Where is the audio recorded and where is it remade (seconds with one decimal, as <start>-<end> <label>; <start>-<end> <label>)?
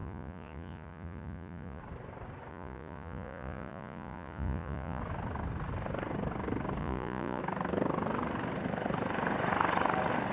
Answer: 0.0-1.8 remade; 1.8-2.5 recorded; 2.5-5.0 remade; 5.0-6.8 recorded; 6.8-7.4 remade; 7.4-10.3 recorded